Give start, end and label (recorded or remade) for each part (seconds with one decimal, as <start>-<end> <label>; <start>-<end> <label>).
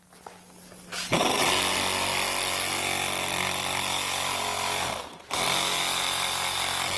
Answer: 0.0-7.0 recorded